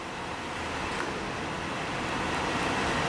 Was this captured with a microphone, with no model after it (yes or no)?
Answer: yes